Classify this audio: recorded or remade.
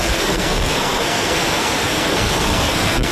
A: remade